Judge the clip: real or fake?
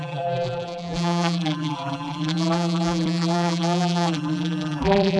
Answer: fake